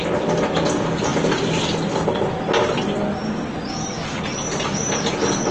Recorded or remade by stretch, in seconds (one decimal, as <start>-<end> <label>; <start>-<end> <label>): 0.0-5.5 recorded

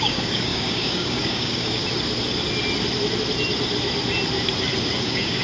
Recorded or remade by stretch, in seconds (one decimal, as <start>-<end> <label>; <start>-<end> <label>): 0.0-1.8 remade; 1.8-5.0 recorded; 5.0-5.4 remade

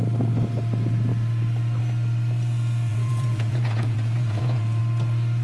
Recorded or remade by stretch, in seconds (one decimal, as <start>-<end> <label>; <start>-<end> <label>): 0.0-2.9 recorded; 2.9-4.8 remade; 4.8-5.4 recorded

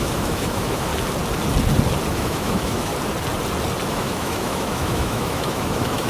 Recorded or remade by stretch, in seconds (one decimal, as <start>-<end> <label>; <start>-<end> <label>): 0.0-0.9 remade; 0.9-2.1 recorded; 2.1-2.9 remade; 2.9-3.9 recorded; 3.9-6.1 remade

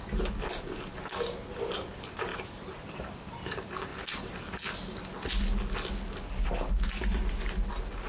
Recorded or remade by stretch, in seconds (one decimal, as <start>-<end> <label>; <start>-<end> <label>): 0.0-2.3 recorded; 2.3-3.0 remade; 3.0-8.1 recorded

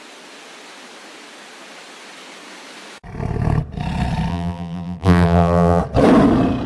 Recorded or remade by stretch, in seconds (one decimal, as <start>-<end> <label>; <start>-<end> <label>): 0.0-4.3 recorded; 4.3-5.8 remade; 5.8-6.7 recorded

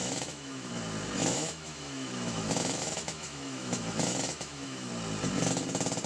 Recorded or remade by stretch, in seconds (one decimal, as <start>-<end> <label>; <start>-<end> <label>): 0.0-0.7 remade; 0.7-1.2 recorded; 1.2-4.9 remade; 4.9-6.1 recorded

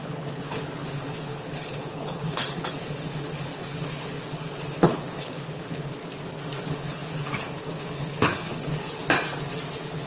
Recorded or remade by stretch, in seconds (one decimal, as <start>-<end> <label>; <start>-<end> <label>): 0.0-6.0 remade; 6.0-6.6 recorded; 6.6-9.0 remade; 9.0-9.7 recorded; 9.7-10.1 remade